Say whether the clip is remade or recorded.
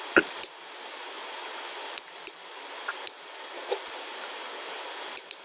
recorded